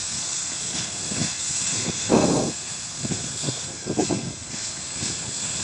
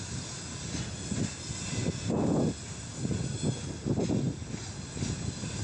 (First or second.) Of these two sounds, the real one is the second